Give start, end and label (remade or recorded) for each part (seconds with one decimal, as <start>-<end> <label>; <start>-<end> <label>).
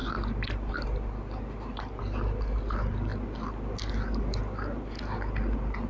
0.0-5.9 recorded